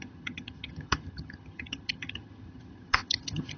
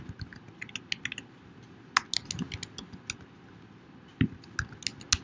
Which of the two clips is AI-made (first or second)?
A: first